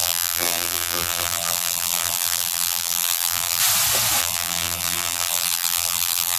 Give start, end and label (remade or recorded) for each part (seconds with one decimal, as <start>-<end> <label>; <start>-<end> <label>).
0.0-3.6 remade; 3.6-4.2 recorded; 4.2-6.4 remade